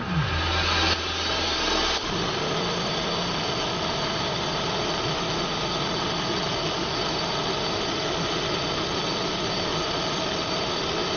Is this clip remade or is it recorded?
recorded